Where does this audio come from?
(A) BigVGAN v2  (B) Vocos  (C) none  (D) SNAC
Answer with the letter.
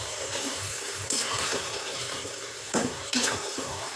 D